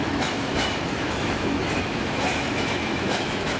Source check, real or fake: fake